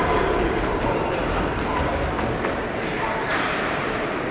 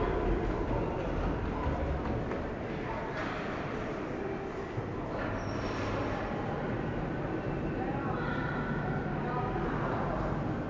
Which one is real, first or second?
second